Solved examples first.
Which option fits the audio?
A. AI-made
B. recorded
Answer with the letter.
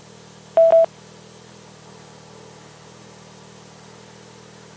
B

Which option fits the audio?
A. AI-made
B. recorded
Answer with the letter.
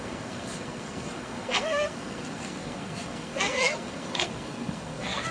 A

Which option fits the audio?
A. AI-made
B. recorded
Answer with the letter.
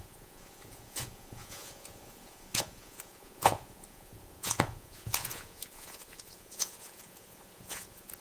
A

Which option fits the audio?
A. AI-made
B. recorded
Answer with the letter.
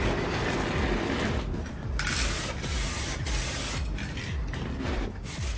B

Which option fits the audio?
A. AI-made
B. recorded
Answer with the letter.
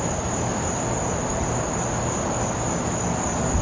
B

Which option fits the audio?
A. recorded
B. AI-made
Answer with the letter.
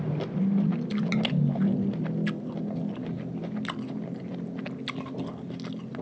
A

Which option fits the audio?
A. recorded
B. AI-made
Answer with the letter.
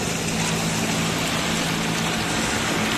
A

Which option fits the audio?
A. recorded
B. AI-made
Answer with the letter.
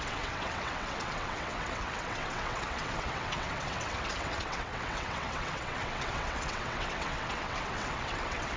B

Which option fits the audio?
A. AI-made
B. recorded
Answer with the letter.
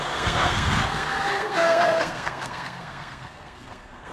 A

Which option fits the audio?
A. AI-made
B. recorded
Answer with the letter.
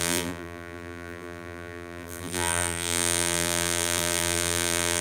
A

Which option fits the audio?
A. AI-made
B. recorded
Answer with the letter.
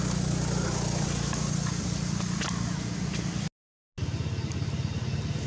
B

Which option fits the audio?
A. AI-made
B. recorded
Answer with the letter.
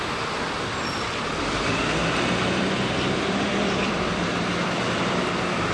A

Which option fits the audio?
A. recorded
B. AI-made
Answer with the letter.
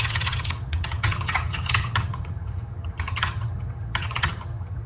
B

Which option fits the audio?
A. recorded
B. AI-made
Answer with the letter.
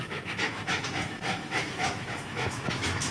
B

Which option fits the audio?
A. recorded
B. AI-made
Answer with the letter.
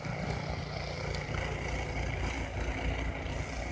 A